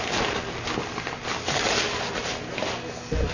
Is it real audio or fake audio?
real